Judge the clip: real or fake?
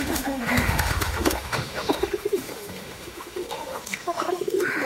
fake